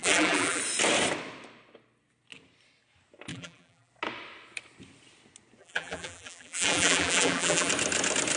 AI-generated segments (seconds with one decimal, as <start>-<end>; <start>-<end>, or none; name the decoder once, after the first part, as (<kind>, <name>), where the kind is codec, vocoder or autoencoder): 0.0-0.6 (vocoder, BigVGAN v2); 3.3-3.9; 5.6-7.7